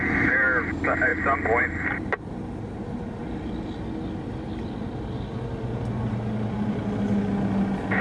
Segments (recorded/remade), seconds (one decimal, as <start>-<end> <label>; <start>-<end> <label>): 0.0-8.0 recorded